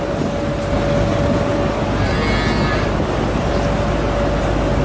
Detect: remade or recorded recorded